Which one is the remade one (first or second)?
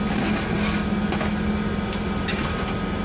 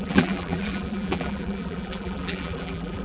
second